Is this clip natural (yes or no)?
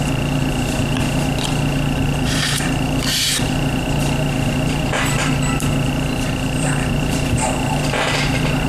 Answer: no